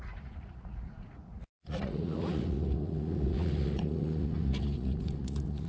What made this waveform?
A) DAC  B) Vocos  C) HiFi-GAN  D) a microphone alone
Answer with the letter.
B